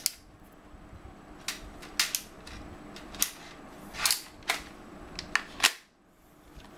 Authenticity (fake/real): real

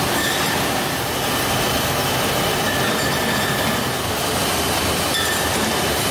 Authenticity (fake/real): real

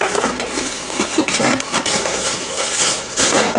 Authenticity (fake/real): fake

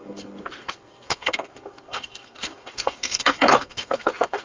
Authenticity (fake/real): fake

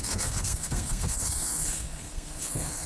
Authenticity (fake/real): fake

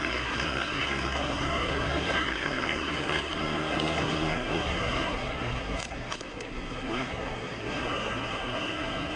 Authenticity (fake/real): fake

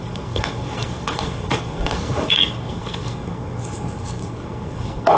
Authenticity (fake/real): fake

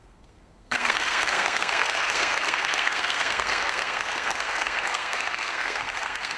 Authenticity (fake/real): fake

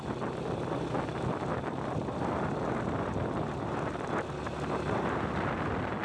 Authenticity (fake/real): real